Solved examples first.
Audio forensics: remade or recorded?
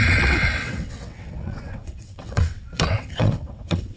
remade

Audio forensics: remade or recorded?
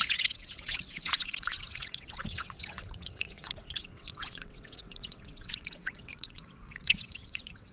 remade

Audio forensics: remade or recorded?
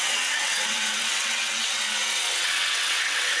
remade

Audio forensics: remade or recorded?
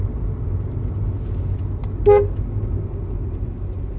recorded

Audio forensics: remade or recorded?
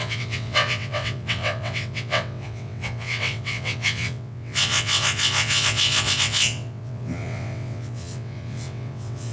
remade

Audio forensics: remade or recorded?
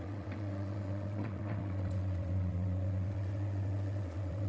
remade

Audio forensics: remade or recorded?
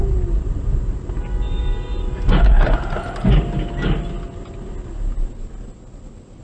recorded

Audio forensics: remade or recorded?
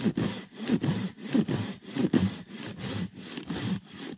recorded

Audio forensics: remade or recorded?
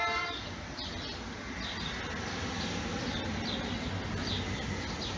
recorded